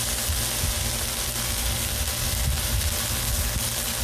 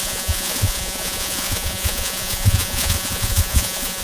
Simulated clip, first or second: second